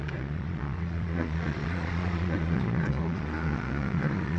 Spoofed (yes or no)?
yes